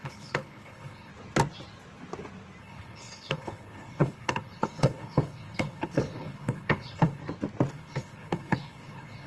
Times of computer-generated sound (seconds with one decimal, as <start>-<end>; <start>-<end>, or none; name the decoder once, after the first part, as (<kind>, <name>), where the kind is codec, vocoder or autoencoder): 0.0-1.1 (codec, HILCodec); 2.6-7.2; 7.7-9.3

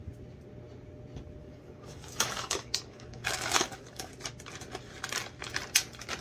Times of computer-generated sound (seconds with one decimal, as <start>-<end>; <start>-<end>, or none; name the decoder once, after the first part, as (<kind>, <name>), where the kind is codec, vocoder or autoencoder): 1.4-4.1 (codec, DAC)